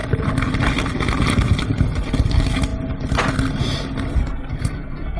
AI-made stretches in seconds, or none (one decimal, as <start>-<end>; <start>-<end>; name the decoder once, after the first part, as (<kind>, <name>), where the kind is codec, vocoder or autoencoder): 4.2-5.2 (codec, SNAC)

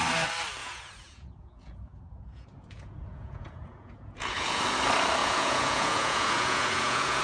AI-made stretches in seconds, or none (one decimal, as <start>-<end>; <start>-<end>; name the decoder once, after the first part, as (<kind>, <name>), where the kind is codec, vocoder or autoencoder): 0.6-4.6 (vocoder, Vocos); 5.2-7.2

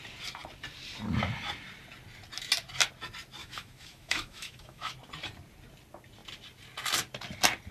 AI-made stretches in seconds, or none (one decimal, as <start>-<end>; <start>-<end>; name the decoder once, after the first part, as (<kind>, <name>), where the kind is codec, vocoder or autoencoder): 3.4-4.9 (autoencoder, DAC-VAE)

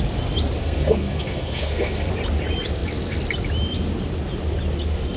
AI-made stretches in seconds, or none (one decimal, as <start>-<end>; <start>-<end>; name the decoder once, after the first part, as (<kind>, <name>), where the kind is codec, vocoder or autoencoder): 0.6-2.1 (codec, SNAC)

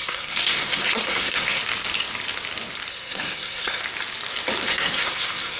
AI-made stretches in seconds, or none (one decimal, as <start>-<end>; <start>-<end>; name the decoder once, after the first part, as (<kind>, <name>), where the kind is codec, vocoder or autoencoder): 0.0-1.6 (codec, SNAC); 2.9-3.8; 4.6-5.6